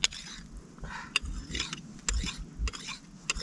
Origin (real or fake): real